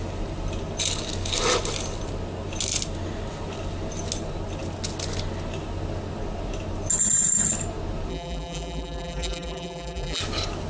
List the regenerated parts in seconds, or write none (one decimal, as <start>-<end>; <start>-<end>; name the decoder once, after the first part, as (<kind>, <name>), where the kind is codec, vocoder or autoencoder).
8.1-10.2 (vocoder, BigVGAN v2)